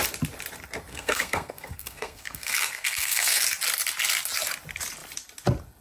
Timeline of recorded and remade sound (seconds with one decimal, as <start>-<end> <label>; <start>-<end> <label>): 0.0-0.9 recorded; 0.9-3.4 remade; 3.4-5.8 recorded